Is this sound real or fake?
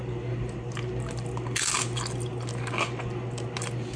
real